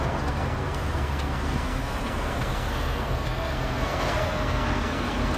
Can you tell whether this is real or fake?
fake